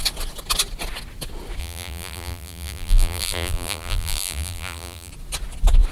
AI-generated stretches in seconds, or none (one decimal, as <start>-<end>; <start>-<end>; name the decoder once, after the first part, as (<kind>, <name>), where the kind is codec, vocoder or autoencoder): 1.6-5.1 (vocoder, BigVGAN v2)